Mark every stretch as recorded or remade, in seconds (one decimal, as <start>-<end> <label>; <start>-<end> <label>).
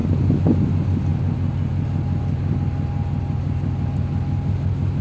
0.0-5.0 recorded